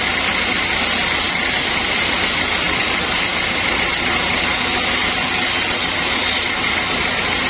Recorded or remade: recorded